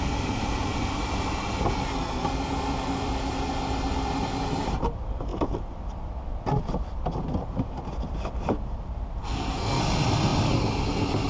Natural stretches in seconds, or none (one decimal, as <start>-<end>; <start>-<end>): 0.0-9.2; 9.8-11.3